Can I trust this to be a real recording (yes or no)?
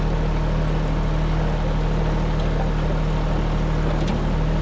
yes